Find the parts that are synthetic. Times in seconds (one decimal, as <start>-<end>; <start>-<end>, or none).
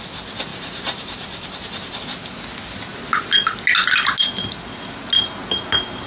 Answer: 0.5-2.0